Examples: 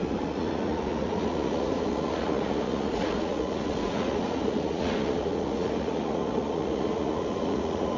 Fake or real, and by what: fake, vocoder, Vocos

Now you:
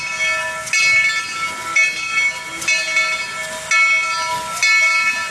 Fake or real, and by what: real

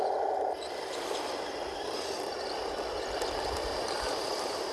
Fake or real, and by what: real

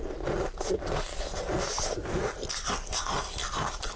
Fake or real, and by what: real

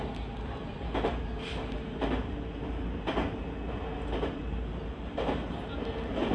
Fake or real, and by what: real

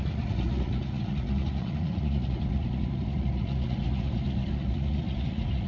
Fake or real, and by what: fake, vocoder, Vocos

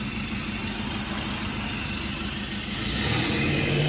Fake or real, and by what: real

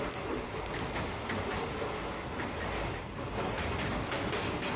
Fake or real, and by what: real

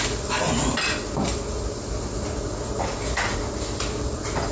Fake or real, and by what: real